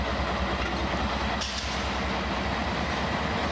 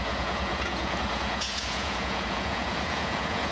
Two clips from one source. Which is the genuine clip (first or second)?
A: first